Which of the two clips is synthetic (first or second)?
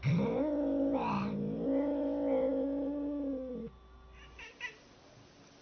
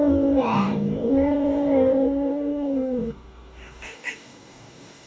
second